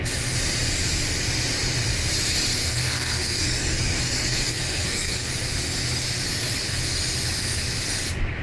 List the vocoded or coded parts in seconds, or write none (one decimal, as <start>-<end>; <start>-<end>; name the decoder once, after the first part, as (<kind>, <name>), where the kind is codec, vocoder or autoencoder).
2.6-5.3 (codec, SNAC)